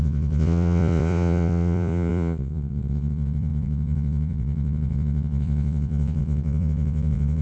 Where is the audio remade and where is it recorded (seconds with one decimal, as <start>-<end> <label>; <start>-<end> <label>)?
0.0-7.4 remade